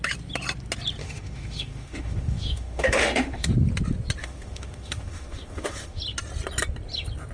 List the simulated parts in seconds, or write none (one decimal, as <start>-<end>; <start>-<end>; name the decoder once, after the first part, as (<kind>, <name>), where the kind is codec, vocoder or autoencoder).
1.0-3.5 (autoencoder, DAC-VAE); 4.2-6.0